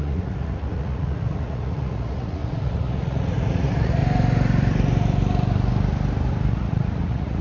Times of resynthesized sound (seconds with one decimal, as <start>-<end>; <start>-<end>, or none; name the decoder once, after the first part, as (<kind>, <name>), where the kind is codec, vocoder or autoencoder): 0.0-4.0 (vocoder, Vocos); 6.5-7.4